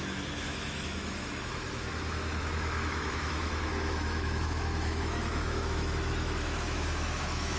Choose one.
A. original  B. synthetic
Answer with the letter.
B